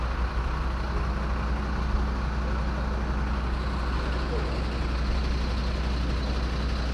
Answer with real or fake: real